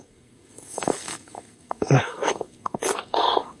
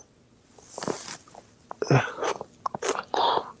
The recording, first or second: second